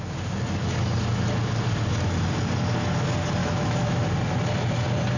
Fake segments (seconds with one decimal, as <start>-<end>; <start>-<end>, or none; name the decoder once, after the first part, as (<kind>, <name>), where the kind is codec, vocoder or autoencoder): 3.4-4.1 (autoencoder, DAC-VAE)

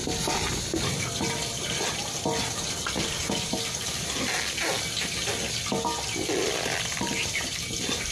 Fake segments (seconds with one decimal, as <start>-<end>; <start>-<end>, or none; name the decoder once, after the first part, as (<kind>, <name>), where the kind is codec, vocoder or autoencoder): none

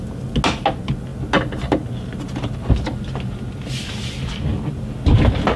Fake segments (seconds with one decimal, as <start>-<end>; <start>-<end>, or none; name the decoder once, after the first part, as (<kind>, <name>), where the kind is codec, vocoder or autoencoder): none

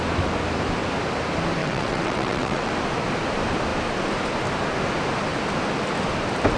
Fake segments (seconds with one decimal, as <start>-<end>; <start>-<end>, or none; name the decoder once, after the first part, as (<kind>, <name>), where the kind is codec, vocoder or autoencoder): 1.6-2.7 (vocoder, WaveNeXt)

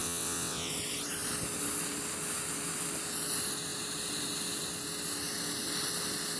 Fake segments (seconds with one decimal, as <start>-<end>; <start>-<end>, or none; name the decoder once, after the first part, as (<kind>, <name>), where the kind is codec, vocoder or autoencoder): 0.0-0.7 (vocoder, WaveNeXt)